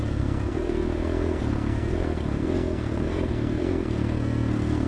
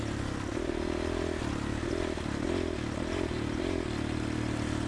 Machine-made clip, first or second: first